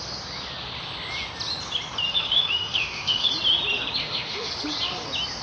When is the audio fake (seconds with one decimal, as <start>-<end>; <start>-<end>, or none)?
2.1-3.3; 4.0-4.5